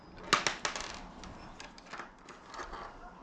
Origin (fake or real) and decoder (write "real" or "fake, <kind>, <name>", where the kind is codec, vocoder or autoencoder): real